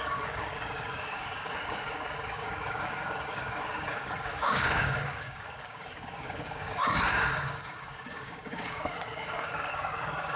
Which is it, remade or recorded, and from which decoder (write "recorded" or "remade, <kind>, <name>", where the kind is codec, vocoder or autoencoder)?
remade, codec, DAC